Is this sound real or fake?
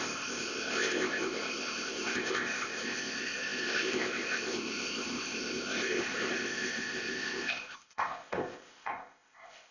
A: fake